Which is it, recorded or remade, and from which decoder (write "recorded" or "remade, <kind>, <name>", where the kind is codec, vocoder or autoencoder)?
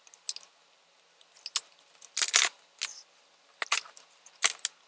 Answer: recorded